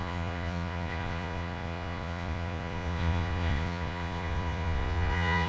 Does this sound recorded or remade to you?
remade